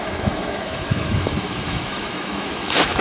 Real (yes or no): no